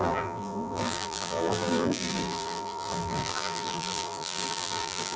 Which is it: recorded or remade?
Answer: remade